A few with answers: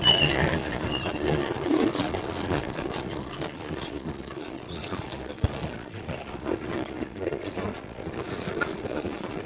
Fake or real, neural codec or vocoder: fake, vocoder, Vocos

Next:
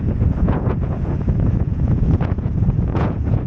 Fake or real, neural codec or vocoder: fake, vocoder, Vocos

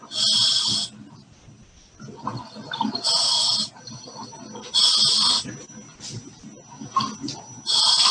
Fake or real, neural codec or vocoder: real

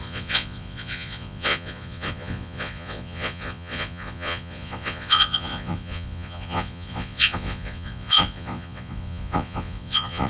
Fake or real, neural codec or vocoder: fake, vocoder, Vocos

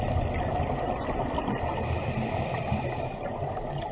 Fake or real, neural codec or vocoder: real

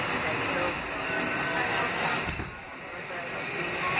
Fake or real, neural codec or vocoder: real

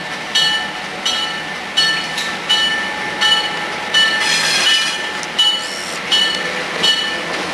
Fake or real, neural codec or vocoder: real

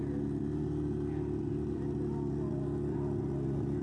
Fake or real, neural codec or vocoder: real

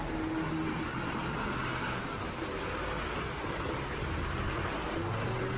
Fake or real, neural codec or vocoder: real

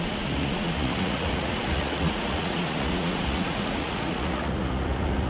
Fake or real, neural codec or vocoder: fake, vocoder, Vocos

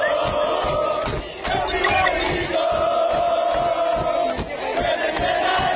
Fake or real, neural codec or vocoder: real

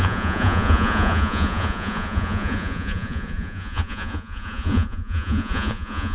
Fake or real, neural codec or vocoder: fake, vocoder, Vocos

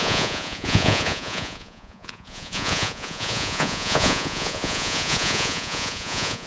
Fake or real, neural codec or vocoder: fake, vocoder, Vocos